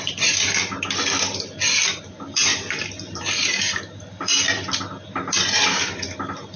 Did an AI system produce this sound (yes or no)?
yes